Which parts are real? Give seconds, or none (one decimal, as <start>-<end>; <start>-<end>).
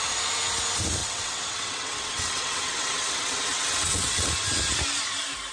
0.0-1.0; 4.3-5.5